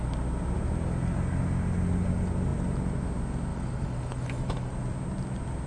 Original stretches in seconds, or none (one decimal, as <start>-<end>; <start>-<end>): 0.0-3.5; 4.7-5.7

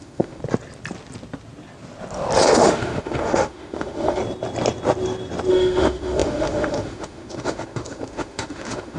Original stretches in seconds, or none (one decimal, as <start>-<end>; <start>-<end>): 0.4-2.5; 4.2-5.5

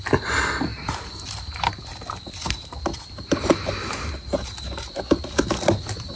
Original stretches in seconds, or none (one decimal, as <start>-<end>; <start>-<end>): 0.0-6.2

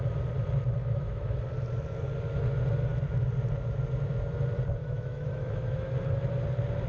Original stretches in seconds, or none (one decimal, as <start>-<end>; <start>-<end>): 0.0-0.8; 1.4-4.8; 5.9-6.9

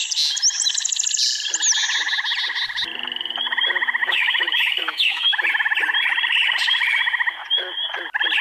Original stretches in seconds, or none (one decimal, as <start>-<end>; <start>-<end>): 0.0-4.0; 5.5-8.4

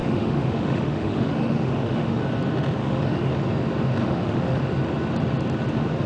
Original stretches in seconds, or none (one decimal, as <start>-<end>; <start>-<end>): 2.2-2.8; 3.3-4.0; 4.6-6.1